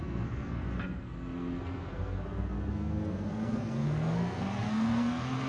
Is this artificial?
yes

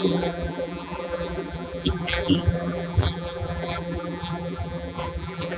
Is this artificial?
yes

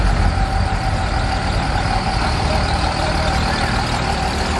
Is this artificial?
no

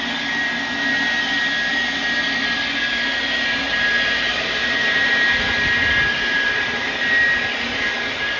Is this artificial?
no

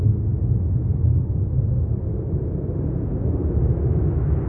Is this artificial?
no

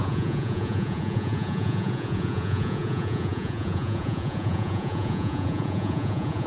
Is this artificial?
yes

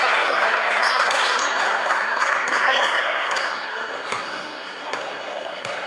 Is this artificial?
yes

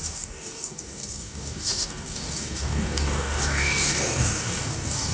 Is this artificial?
yes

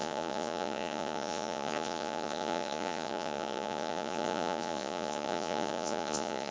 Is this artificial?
yes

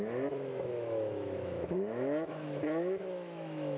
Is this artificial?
yes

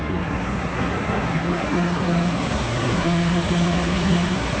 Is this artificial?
yes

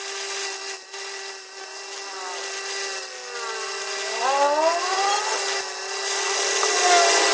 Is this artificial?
no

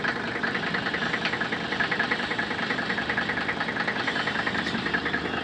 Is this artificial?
yes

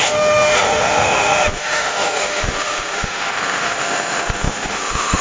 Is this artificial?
yes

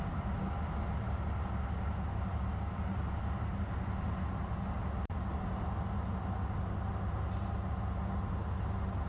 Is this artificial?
no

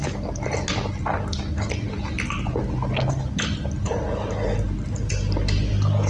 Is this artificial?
no